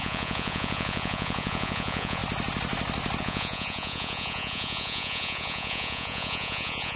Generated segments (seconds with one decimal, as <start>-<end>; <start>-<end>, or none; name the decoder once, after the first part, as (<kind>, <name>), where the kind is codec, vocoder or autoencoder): 0.0-2.2 (vocoder, Vocos); 3.2-7.0